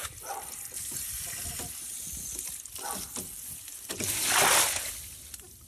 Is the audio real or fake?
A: real